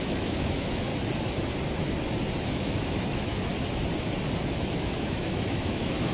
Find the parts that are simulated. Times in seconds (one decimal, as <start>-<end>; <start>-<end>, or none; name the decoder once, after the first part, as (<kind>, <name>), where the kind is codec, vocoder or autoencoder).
0.0-0.9 (autoencoder, DAC-VAE); 2.4-3.5; 4.4-6.1